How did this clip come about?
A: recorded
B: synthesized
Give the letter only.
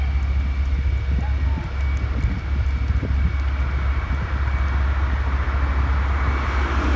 A